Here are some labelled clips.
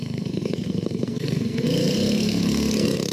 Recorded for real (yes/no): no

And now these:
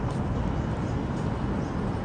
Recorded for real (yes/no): yes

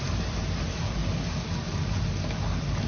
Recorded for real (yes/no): yes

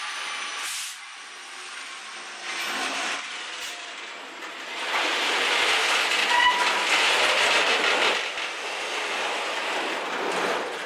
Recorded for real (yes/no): yes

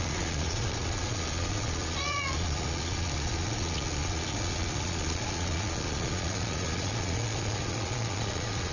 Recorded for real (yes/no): no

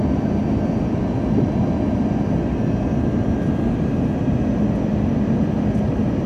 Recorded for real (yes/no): yes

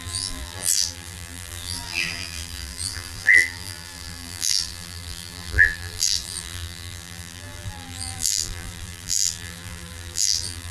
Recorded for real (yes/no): no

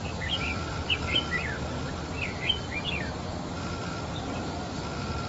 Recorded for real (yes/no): yes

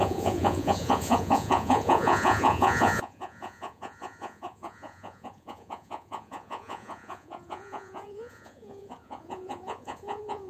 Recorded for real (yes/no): no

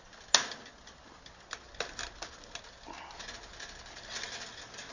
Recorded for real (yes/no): yes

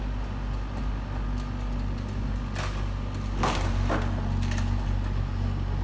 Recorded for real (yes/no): yes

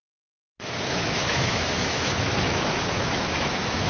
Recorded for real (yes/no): no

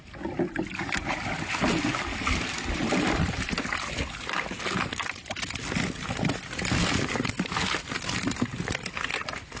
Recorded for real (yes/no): yes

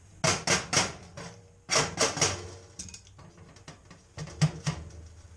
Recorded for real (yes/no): yes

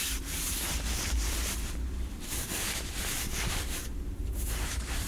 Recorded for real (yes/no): no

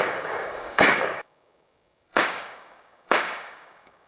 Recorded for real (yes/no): no